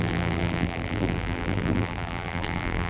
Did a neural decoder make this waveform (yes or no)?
yes